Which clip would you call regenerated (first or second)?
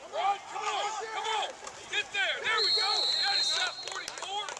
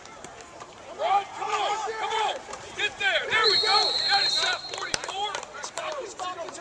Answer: second